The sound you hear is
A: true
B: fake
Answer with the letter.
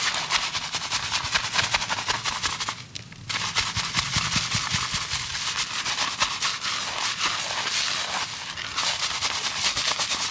A